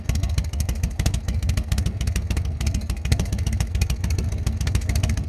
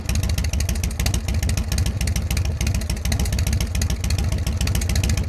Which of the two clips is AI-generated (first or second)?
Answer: first